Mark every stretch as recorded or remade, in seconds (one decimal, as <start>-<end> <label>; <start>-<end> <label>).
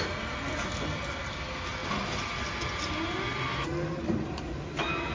0.0-5.1 recorded